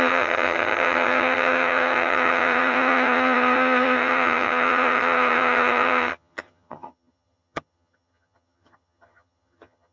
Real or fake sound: fake